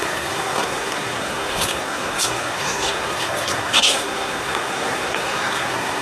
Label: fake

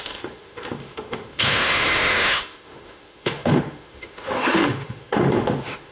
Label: fake